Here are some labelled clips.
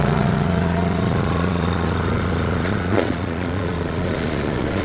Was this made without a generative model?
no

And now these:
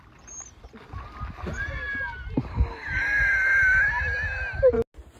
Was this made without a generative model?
yes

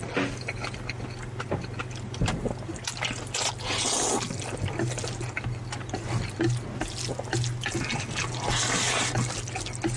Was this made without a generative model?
yes